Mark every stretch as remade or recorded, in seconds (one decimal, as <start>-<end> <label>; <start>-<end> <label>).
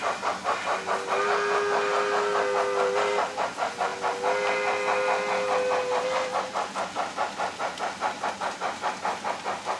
0.0-9.8 recorded